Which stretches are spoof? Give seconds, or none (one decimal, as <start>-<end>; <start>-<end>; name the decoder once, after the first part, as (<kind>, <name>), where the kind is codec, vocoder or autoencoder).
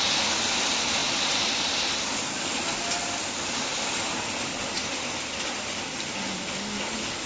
3.7-4.2 (vocoder, BigVGAN v2)